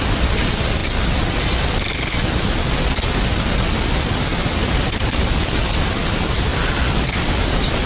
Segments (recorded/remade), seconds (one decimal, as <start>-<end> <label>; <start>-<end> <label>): 0.0-7.9 recorded